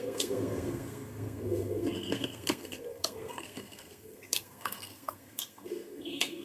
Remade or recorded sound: remade